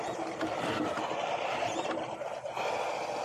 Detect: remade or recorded recorded